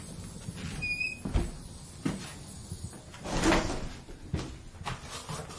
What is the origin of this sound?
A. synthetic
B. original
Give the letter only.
B